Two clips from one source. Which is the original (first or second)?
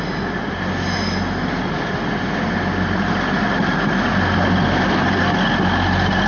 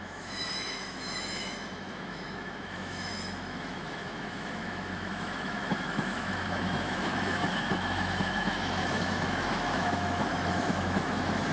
first